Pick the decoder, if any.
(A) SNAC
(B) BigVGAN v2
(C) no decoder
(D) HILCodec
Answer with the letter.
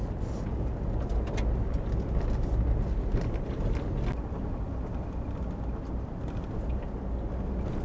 C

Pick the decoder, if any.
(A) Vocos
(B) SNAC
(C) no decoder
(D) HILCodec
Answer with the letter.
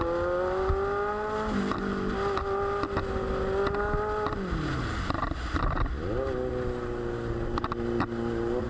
C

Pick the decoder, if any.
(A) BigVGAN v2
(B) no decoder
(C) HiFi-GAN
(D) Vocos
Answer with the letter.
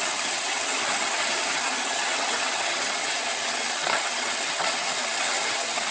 C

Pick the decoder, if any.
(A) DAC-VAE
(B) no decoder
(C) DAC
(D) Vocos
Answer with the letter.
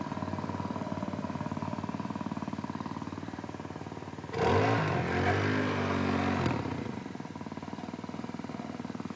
B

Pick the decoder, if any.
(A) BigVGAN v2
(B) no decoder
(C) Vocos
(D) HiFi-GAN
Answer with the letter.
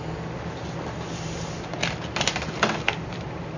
B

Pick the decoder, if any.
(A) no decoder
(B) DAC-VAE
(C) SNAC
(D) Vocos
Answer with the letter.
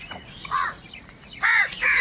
D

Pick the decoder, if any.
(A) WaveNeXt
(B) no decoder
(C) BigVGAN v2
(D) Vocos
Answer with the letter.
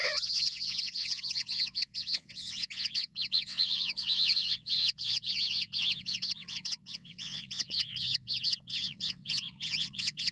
A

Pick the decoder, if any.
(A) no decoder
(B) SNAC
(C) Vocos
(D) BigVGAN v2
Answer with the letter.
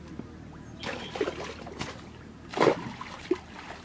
A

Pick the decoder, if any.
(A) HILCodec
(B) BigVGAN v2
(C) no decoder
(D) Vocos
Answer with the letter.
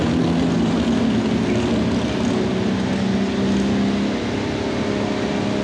C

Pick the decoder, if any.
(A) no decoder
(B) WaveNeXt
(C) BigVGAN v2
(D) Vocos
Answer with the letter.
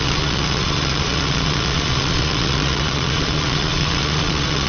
D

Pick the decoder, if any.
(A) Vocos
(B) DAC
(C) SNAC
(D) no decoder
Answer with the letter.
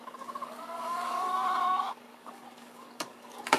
B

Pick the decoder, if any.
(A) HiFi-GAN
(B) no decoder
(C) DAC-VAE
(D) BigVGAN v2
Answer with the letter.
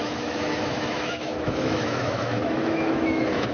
C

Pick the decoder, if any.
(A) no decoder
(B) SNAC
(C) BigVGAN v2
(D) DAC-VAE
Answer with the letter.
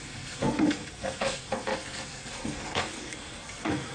B